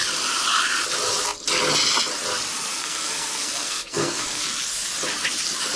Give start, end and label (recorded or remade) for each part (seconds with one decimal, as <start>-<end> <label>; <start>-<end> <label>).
0.0-2.7 recorded; 2.7-4.6 remade; 4.6-5.8 recorded